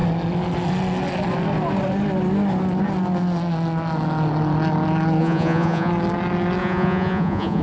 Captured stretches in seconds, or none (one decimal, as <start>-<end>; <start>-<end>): 0.0-5.2; 5.9-6.6